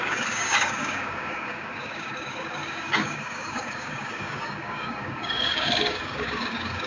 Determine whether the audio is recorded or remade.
remade